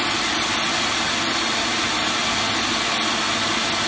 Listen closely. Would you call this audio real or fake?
real